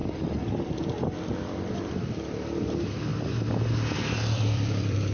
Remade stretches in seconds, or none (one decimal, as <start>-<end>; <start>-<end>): 0.0-3.1; 4.2-5.1